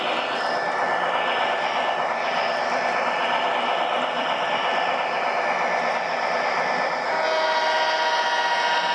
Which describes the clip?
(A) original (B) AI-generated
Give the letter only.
A